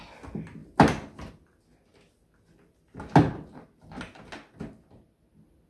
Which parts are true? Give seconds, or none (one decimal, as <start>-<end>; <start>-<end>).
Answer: 0.0-5.7